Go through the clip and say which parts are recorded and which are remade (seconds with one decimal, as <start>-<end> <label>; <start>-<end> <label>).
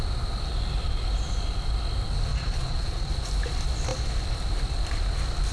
0.0-2.3 recorded; 2.3-3.1 remade; 3.1-5.5 recorded